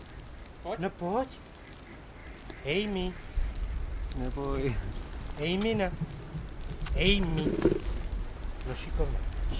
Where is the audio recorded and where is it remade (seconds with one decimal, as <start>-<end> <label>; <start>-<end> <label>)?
0.0-9.6 recorded